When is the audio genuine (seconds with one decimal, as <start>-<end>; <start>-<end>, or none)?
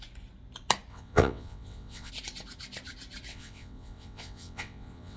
0.0-0.9; 2.1-3.3